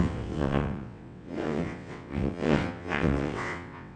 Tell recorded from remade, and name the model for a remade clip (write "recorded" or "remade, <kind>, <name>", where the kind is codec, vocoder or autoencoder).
remade, vocoder, WaveNeXt